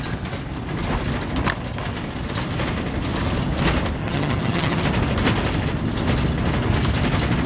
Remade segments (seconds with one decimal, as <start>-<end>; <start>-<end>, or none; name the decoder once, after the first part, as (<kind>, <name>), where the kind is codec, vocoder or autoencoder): 4.0-4.8 (vocoder, HiFi-GAN)